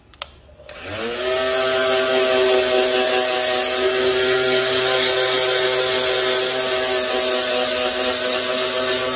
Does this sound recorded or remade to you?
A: recorded